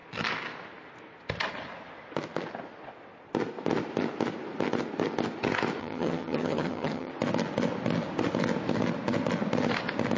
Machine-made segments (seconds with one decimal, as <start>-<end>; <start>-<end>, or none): 5.8-7.1